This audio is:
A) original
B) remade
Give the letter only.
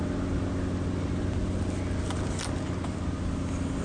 A